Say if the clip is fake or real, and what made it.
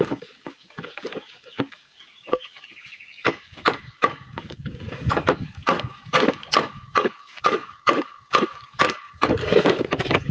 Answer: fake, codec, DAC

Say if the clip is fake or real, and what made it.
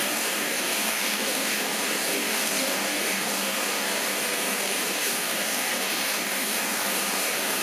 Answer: fake, codec, DAC